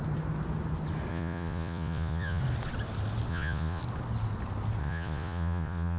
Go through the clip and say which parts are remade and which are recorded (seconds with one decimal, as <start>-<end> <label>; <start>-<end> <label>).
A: 0.0-1.1 recorded; 1.1-2.4 remade; 2.4-3.3 recorded; 3.3-3.8 remade; 3.8-4.8 recorded; 4.8-6.0 remade